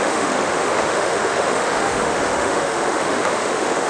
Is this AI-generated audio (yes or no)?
yes